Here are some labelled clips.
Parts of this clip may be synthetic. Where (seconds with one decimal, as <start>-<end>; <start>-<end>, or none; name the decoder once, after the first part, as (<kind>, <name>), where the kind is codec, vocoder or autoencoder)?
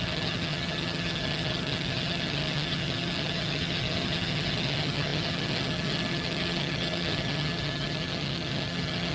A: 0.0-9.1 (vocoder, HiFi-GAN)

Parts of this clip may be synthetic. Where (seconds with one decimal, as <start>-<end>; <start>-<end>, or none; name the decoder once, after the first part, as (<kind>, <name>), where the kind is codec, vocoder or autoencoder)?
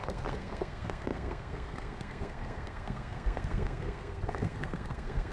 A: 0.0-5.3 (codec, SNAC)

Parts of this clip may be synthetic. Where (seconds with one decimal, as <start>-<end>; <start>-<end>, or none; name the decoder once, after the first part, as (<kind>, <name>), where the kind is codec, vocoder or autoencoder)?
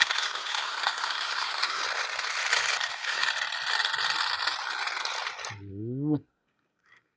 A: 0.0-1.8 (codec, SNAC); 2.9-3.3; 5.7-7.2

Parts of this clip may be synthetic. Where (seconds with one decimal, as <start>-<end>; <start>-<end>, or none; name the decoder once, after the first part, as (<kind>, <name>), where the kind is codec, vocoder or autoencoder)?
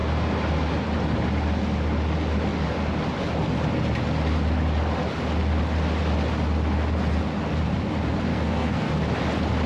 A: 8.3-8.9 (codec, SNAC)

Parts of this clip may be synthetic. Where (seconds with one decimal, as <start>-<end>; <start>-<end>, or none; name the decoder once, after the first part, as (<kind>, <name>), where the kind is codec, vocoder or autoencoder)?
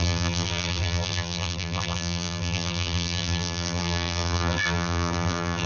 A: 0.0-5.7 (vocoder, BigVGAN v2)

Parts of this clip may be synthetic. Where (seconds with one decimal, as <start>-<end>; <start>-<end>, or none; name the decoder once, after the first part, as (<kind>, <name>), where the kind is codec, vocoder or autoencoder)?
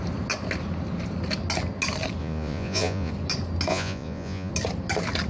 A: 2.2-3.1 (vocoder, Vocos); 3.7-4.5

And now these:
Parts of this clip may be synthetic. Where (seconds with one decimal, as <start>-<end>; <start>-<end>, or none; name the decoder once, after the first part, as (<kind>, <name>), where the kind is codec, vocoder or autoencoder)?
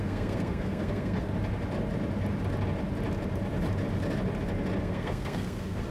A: 0.0-1.3 (codec, SNAC); 4.8-5.9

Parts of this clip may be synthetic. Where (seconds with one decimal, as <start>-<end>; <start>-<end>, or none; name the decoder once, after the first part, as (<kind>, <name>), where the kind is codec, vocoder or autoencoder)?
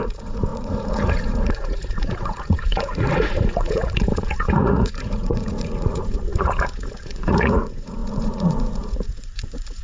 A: 0.0-9.8 (vocoder, Vocos)